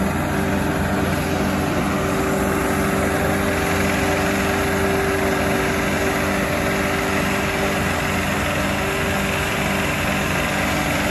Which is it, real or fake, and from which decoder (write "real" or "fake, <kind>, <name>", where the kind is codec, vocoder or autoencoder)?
real